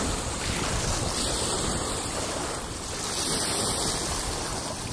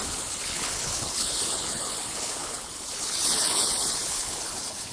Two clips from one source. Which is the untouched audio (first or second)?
first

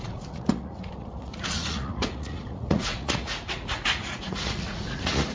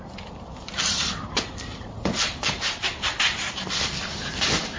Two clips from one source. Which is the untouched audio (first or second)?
second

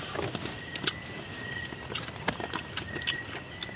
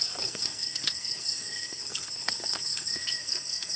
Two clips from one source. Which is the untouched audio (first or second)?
first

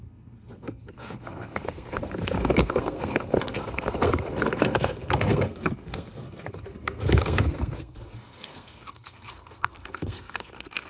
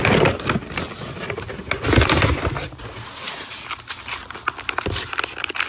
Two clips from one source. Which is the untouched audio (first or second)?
second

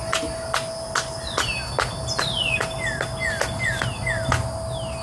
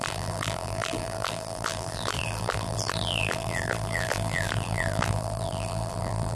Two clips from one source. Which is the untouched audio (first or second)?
first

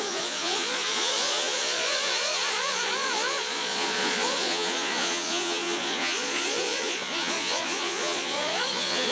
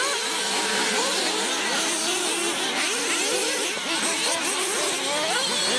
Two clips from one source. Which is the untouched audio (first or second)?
second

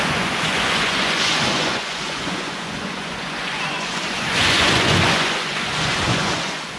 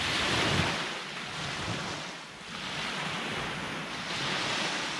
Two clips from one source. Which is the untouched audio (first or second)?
second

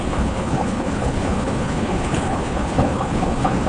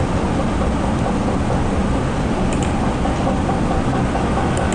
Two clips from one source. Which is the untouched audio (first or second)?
second